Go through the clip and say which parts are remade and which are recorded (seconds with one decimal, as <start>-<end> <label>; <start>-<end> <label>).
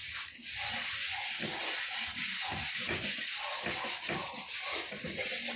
0.0-5.6 recorded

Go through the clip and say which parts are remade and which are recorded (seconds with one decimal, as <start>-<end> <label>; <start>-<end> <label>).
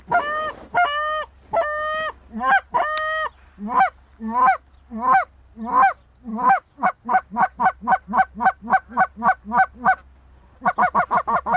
0.0-6.3 recorded; 6.3-7.6 remade; 7.6-11.6 recorded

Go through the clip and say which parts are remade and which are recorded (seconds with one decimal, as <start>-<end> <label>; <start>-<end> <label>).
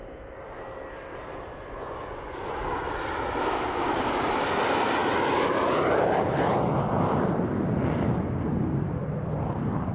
0.0-1.6 recorded; 1.6-2.8 remade; 2.8-9.9 recorded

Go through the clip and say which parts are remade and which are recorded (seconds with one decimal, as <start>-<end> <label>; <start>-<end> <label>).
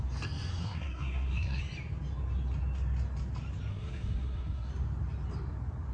0.0-0.6 recorded; 0.6-1.6 remade; 1.6-3.7 recorded; 3.7-4.7 remade; 4.7-5.9 recorded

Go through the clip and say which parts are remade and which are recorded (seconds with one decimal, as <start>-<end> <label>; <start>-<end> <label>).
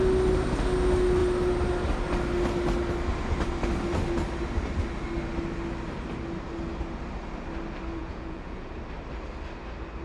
0.0-8.0 recorded; 8.0-8.7 remade; 8.7-10.0 recorded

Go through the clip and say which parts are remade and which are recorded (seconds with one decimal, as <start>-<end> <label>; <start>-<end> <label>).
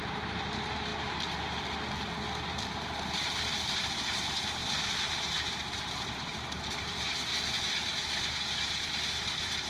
0.0-0.9 remade; 0.9-3.3 recorded; 3.3-7.3 remade; 7.3-8.2 recorded; 8.2-9.7 remade